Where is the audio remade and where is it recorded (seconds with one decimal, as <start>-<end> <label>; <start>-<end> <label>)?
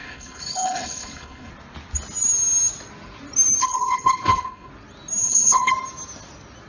0.0-1.5 remade; 1.5-3.6 recorded; 3.6-4.7 remade; 4.7-5.2 recorded; 5.2-5.7 remade; 5.7-6.7 recorded